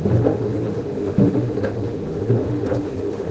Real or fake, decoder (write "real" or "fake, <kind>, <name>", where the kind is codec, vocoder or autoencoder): fake, autoencoder, DAC-VAE